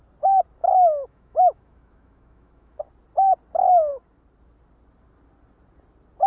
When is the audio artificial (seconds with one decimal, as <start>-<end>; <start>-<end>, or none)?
0.6-2.8